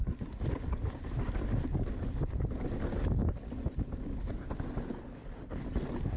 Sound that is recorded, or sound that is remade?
recorded